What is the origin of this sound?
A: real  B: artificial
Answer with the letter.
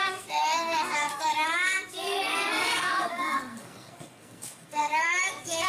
B